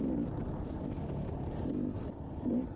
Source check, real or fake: real